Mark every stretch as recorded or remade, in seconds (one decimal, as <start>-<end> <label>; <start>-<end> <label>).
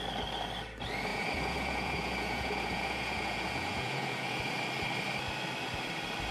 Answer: 0.0-1.1 recorded; 1.1-4.5 remade; 4.5-6.3 recorded